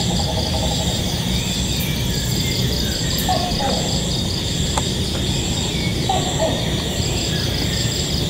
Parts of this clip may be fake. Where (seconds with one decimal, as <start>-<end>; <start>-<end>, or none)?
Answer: 2.3-3.6